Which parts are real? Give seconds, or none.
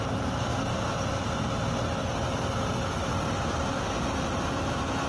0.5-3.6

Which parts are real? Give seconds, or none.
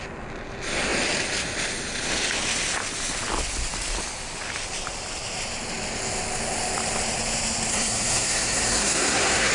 0.0-7.7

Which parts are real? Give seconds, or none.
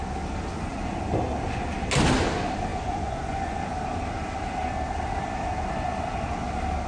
0.0-2.7; 3.6-6.9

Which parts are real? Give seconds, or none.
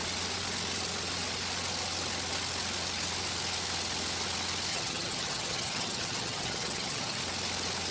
0.0-4.7; 7.2-7.9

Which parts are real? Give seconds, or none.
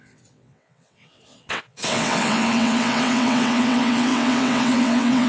none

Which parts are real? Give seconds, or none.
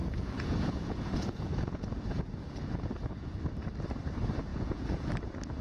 3.4-4.5; 5.1-5.6